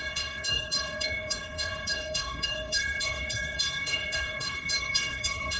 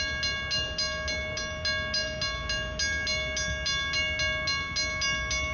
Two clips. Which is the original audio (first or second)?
second